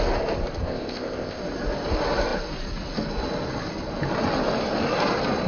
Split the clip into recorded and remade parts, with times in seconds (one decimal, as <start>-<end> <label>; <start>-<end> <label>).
0.0-0.6 recorded; 0.6-1.4 remade; 1.4-5.5 recorded